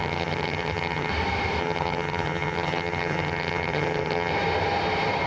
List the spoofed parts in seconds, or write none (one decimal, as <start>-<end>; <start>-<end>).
0.0-1.1; 1.6-4.3